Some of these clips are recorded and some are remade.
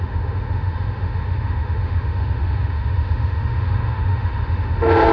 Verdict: remade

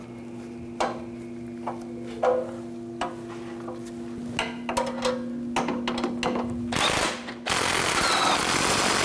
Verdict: recorded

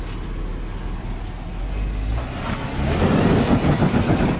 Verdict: recorded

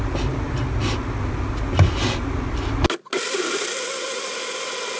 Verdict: recorded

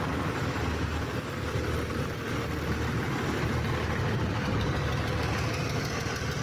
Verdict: recorded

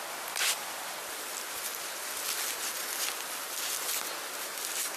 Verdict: recorded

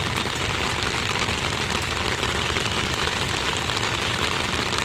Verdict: recorded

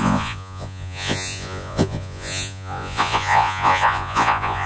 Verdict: remade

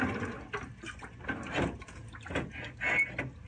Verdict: recorded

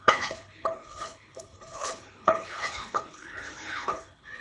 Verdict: remade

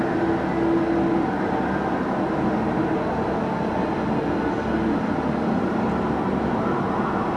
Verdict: recorded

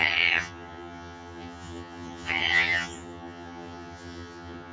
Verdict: remade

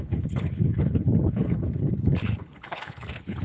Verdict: remade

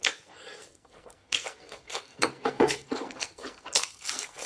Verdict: remade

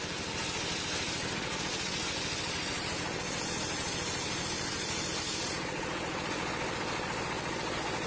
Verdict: recorded